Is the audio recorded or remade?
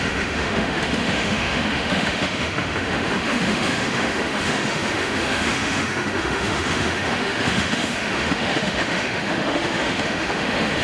remade